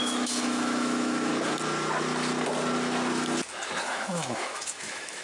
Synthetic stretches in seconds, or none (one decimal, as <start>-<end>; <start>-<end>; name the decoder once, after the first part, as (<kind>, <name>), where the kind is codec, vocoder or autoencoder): 0.0-1.3 (autoencoder, DAC-VAE); 3.8-5.2